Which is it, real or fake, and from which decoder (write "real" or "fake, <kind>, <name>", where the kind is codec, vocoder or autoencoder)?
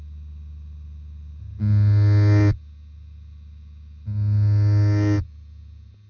real